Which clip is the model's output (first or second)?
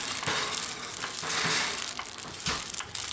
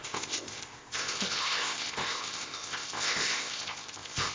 second